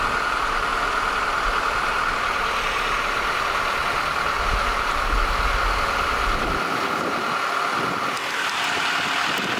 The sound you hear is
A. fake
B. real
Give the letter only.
B